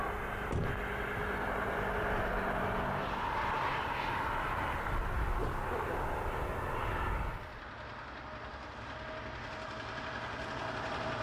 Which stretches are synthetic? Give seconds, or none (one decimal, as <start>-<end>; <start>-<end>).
none